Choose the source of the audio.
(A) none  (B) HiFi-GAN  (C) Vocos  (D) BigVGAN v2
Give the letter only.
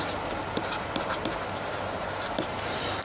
D